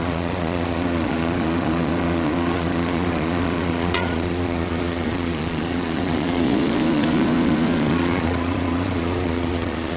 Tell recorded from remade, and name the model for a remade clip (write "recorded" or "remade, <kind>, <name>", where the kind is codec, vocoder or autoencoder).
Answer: remade, vocoder, Vocos